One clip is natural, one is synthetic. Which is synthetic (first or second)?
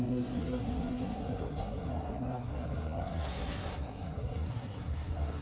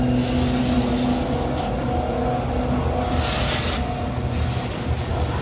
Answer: first